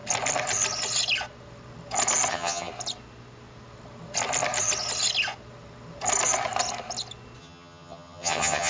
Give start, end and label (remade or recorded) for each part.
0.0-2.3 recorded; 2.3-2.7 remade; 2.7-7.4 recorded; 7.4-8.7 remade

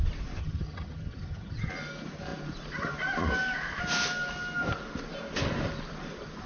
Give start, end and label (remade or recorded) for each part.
0.0-0.4 recorded; 0.4-1.7 remade; 1.7-6.5 recorded

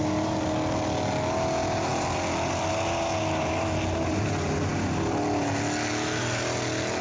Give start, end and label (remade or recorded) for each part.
0.0-7.0 recorded

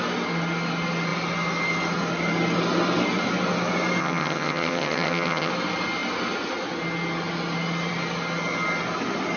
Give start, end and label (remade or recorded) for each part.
0.0-4.0 recorded; 4.0-5.5 remade; 5.5-9.4 recorded

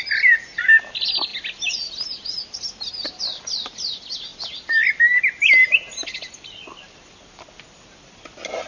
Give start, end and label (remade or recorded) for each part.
0.0-8.7 recorded

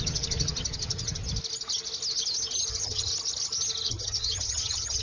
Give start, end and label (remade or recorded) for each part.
0.0-1.2 remade; 1.2-2.7 recorded; 2.7-3.1 remade; 3.1-3.9 recorded; 3.9-5.0 remade

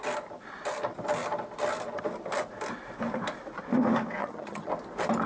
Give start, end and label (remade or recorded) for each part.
0.0-4.2 recorded; 4.2-4.7 remade; 4.7-5.3 recorded